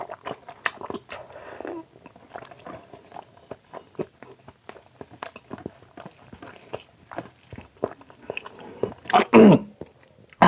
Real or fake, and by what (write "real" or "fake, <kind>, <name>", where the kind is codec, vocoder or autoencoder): real